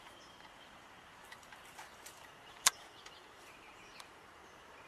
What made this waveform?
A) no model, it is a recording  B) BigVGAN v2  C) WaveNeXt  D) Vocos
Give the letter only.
B